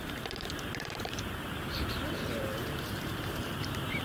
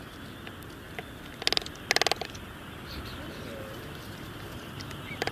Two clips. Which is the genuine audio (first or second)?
second